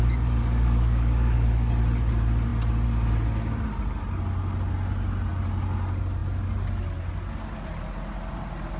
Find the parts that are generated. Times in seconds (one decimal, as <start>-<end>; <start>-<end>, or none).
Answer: 0.4-1.7